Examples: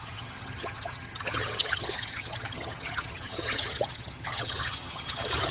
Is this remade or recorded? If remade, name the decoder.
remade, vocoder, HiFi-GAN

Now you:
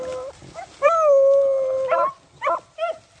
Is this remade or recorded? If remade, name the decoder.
recorded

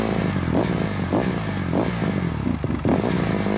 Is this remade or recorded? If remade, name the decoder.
recorded